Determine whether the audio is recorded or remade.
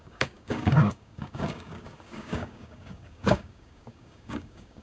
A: remade